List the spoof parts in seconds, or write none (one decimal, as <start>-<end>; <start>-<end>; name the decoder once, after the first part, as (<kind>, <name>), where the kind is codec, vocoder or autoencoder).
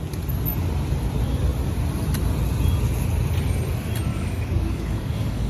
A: 4.1-5.5 (codec, DAC)